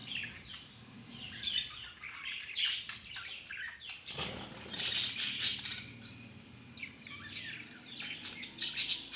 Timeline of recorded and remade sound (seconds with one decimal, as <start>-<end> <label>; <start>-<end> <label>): 0.0-3.8 remade; 3.8-5.5 recorded; 5.5-8.0 remade; 8.0-9.2 recorded